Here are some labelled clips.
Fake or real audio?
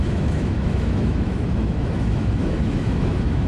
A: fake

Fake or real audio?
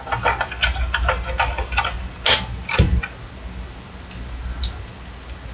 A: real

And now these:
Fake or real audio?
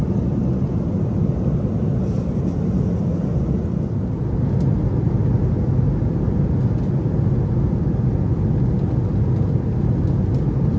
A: real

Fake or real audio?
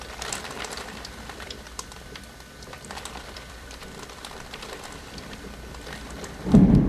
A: fake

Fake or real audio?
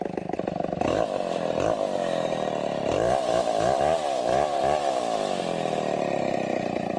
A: fake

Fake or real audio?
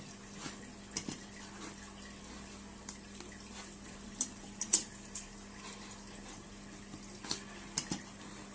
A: real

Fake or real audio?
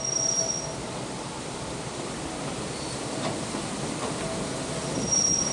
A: real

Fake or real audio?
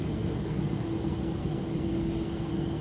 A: fake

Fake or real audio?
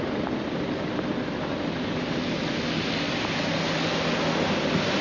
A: real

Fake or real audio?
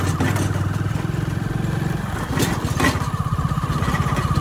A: real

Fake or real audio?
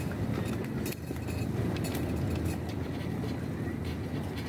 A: real